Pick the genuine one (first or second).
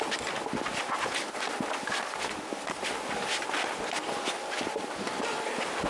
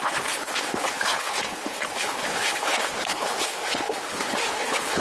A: first